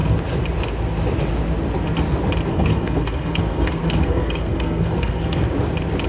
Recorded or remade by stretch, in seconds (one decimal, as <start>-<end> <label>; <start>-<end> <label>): 0.0-2.5 recorded; 2.5-5.4 remade; 5.4-6.1 recorded

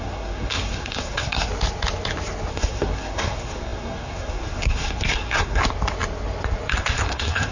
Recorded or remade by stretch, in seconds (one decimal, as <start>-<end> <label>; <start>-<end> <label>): 0.0-1.5 remade; 1.5-2.5 recorded; 2.5-5.6 remade; 5.6-6.8 recorded; 6.8-7.5 remade

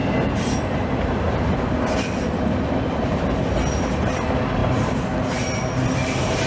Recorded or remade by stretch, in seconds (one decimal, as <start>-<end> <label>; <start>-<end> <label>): 0.0-6.5 recorded

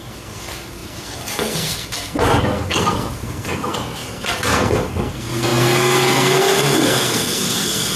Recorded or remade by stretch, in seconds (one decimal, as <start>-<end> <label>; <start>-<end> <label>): 0.0-8.0 remade

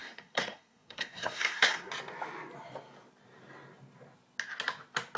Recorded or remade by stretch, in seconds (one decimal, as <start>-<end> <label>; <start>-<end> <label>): 0.0-1.9 remade; 1.9-5.2 recorded

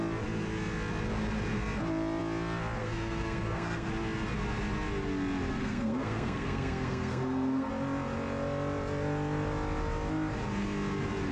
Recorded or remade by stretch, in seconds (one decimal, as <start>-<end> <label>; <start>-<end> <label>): 0.0-2.8 recorded; 2.8-3.9 remade; 3.9-5.5 recorded; 5.5-7.7 remade; 7.7-11.3 recorded

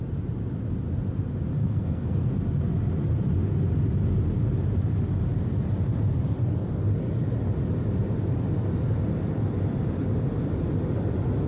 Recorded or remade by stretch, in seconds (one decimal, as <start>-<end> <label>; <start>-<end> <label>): 0.0-1.6 recorded; 1.6-2.4 remade; 2.4-11.5 recorded